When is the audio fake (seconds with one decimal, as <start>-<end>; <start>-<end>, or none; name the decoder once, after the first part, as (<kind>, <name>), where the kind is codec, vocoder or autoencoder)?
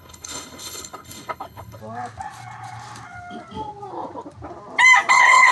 0.0-1.8 (codec, HILCodec); 5.1-5.5